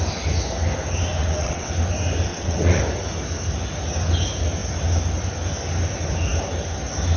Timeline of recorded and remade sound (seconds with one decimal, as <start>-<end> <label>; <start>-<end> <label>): 0.0-1.2 recorded; 1.2-1.7 remade; 1.7-2.3 recorded; 2.3-2.8 remade; 2.8-7.2 recorded